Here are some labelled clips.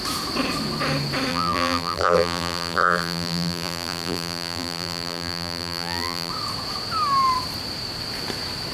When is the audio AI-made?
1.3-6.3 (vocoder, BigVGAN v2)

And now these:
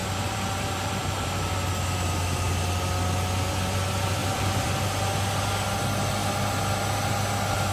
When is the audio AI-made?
0.0-1.3 (vocoder, BigVGAN v2); 4.2-4.7

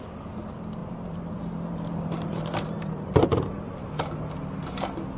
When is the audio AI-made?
0.8-3.9 (vocoder, BigVGAN v2)

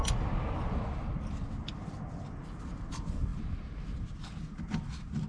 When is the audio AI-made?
none

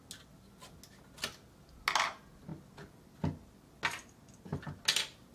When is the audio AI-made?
none

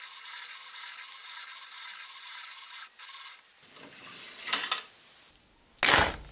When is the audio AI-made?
none

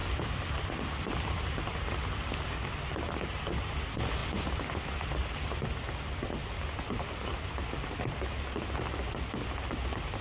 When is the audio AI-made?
0.0-2.5 (vocoder, BigVGAN v2)